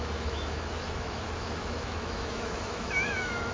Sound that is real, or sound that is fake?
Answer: fake